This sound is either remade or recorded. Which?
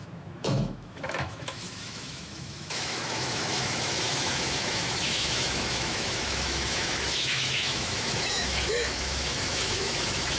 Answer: remade